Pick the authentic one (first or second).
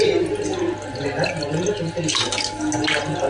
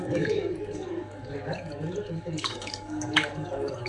first